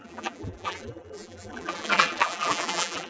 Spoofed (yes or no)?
yes